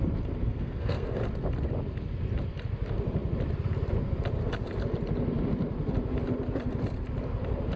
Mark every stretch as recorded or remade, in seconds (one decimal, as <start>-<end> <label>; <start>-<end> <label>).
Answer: 0.0-0.4 recorded; 0.4-1.2 remade; 1.2-7.8 recorded